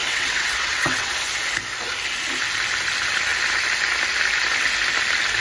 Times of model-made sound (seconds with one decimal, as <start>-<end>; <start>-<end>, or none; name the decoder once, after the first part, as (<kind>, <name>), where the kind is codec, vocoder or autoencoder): 0.0-1.1 (vocoder, WaveNeXt)